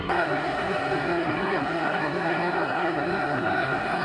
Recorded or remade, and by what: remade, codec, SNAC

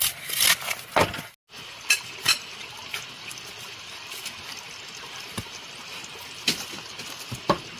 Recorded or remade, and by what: recorded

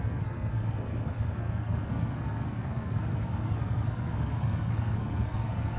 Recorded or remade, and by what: remade, codec, SNAC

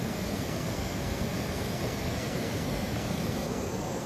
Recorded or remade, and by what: remade, codec, SNAC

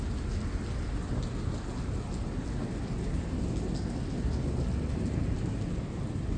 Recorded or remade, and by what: recorded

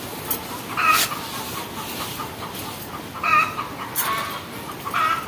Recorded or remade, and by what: recorded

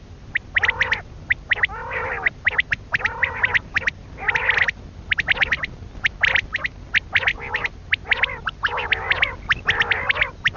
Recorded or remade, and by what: recorded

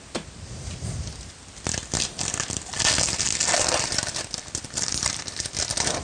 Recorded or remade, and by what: recorded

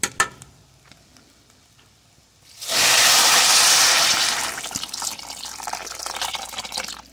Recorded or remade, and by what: recorded